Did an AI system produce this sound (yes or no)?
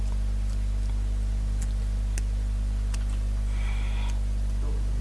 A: no